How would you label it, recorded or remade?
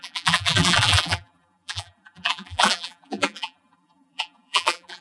remade